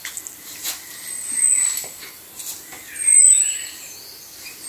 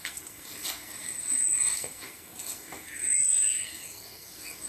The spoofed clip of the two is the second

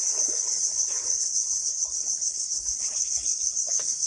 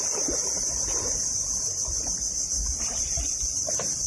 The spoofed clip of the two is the first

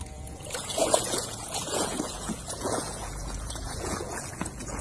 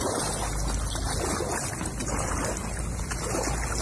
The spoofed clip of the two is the first